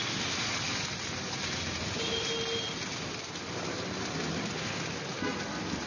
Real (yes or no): yes